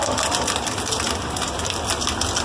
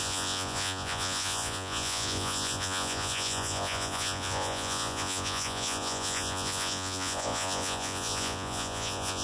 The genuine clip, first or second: first